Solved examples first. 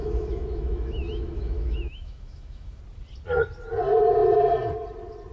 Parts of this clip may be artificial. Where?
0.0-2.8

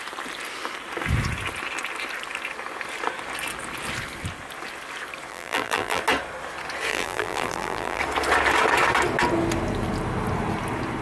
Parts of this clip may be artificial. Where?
5.3-6.0; 6.9-8.0

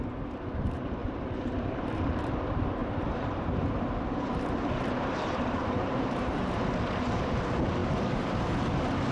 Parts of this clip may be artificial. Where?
1.0-2.3; 2.8-6.5

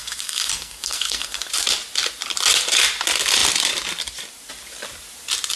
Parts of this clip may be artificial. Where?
0.0-1.5

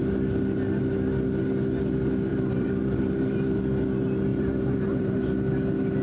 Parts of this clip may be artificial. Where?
2.3-3.6; 4.3-5.3

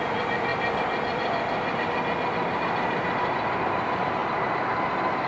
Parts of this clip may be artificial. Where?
none

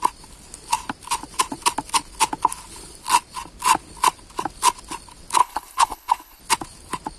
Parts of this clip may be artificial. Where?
5.4-6.4

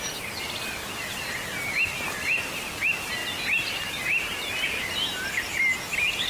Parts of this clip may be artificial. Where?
none